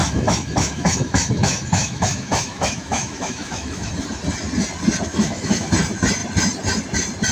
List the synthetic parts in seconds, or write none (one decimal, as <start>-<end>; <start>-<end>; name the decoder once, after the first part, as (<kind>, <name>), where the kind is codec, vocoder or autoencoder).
0.0-3.9 (autoencoder, DAC-VAE); 5.1-5.7